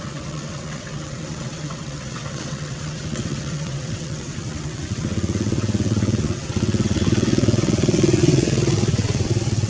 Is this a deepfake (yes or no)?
yes